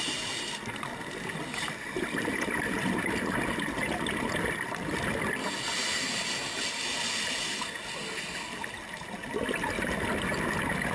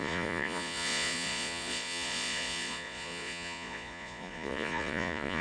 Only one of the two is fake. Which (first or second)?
second